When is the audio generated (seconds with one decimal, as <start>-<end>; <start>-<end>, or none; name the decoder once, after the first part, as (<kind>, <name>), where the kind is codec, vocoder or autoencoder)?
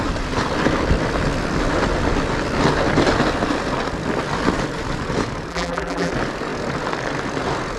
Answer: 5.5-6.1 (vocoder, BigVGAN v2)